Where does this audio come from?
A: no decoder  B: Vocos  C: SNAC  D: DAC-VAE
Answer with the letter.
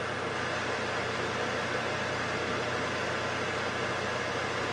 A